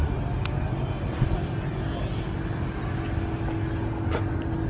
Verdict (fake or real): real